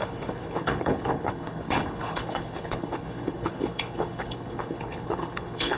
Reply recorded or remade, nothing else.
remade